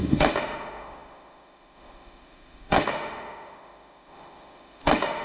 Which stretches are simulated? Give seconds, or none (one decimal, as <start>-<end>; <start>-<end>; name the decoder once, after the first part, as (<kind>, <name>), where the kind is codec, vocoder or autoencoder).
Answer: 0.0-5.2 (autoencoder, DAC-VAE)